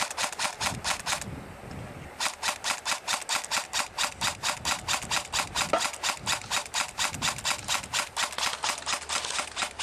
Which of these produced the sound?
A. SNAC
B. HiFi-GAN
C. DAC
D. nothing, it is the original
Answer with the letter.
D